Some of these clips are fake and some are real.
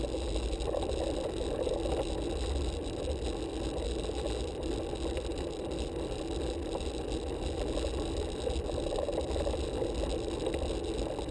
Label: real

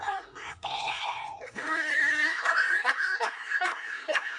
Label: fake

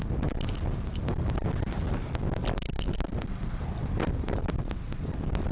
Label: real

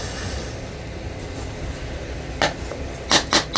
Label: real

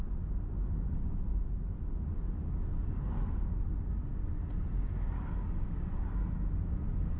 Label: real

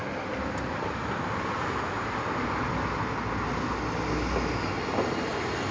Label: real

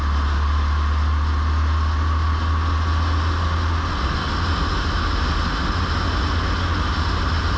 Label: real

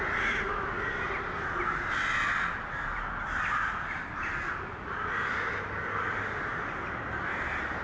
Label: real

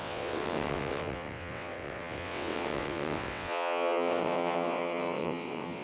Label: fake